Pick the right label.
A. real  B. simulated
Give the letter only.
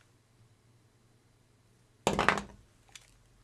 A